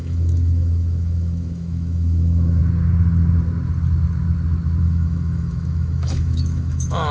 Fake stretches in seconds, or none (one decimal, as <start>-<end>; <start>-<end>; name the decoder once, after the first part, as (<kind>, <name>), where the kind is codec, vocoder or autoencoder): 0.0-2.6 (autoencoder, DAC-VAE); 4.8-7.1